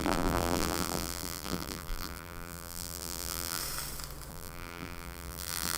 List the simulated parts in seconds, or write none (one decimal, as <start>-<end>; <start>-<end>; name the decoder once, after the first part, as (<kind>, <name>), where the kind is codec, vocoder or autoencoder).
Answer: 0.0-3.6 (vocoder, BigVGAN v2); 4.3-5.8

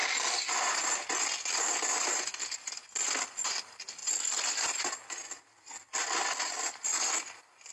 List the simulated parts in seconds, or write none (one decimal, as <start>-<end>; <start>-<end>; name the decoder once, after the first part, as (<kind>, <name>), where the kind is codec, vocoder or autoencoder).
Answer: 0.0-0.9 (vocoder, BigVGAN v2)

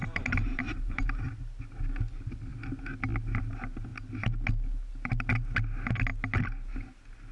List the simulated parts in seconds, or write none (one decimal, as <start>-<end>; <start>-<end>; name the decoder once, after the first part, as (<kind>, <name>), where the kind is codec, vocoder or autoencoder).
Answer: 0.0-1.4 (vocoder, BigVGAN v2)

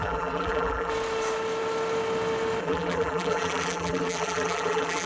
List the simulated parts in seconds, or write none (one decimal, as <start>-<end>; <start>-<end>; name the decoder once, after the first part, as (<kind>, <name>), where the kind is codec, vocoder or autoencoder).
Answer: 0.0-0.9 (vocoder, BigVGAN v2); 2.6-5.1

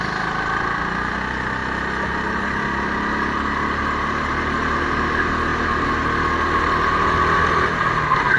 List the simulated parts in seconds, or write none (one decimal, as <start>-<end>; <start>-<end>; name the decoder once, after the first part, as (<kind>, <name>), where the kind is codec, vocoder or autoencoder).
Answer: none

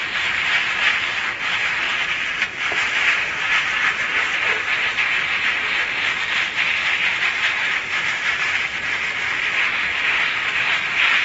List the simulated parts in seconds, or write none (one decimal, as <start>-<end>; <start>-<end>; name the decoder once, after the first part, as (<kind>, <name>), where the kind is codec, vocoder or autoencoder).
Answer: 1.6-4.3 (vocoder, BigVGAN v2); 6.8-8.6

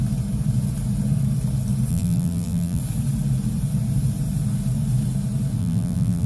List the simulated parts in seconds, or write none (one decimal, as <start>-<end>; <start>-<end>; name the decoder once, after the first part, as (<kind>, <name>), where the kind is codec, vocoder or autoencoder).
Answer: 1.9-2.8 (vocoder, BigVGAN v2); 5.6-6.3

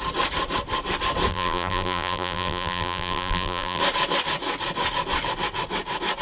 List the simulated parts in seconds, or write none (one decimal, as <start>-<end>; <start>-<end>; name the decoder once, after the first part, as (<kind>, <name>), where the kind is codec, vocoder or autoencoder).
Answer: 1.3-3.8 (vocoder, BigVGAN v2)